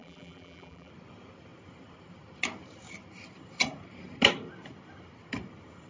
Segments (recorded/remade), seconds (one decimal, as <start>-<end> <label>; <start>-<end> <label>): 0.0-0.9 remade; 0.9-5.9 recorded